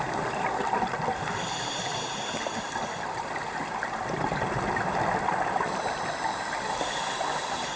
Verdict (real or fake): fake